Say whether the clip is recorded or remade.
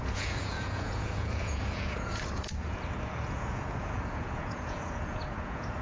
remade